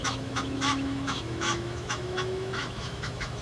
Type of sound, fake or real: fake